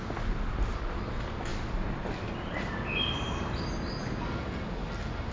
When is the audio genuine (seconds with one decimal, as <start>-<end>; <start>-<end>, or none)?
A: 0.0-5.3